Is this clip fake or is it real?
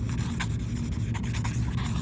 real